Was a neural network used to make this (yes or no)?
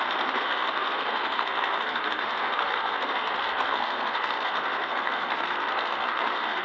yes